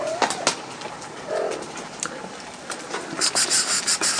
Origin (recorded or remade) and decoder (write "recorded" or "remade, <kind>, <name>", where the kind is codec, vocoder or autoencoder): recorded